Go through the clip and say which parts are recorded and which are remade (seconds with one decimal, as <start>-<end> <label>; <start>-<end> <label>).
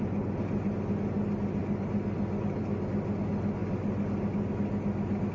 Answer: 0.0-5.3 recorded